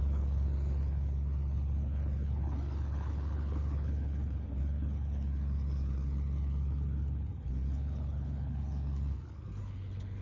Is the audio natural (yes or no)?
no